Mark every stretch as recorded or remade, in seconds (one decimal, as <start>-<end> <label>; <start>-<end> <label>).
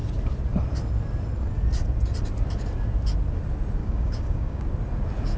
0.0-3.8 recorded; 3.8-4.6 remade; 4.6-5.4 recorded